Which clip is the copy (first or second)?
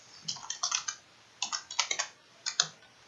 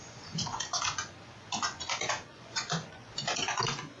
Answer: second